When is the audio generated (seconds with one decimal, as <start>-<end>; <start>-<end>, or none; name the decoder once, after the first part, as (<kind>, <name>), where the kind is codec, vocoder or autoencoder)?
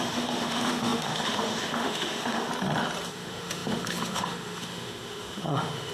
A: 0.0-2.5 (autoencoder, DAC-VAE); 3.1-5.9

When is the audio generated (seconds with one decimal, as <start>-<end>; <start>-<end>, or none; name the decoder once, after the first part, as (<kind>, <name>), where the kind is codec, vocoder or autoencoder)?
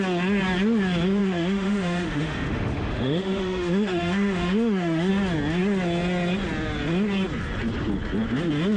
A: 1.2-5.1 (autoencoder, DAC-VAE)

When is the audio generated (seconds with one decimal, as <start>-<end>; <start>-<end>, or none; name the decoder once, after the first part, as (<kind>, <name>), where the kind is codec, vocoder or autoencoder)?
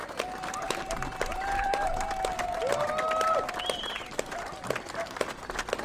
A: none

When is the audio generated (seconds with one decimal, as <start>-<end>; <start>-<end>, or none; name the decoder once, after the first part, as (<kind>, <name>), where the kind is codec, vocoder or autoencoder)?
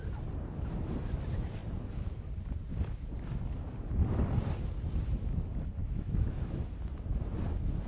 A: 5.8-6.6 (autoencoder, DAC-VAE)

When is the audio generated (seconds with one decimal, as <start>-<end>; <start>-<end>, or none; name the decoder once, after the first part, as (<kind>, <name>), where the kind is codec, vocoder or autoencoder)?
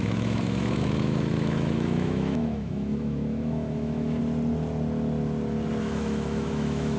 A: 0.0-4.2 (autoencoder, DAC-VAE); 5.8-7.0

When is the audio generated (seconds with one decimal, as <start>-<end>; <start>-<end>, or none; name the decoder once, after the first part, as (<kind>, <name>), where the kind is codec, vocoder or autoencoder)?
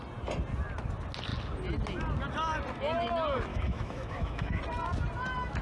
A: 3.5-4.6 (autoencoder, DAC-VAE)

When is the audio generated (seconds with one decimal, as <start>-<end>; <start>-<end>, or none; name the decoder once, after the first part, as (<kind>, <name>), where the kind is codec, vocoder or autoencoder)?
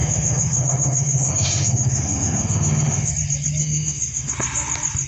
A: 0.0-3.1 (autoencoder, DAC-VAE); 3.6-4.3